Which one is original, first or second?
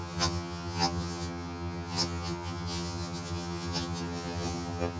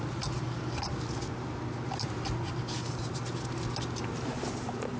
second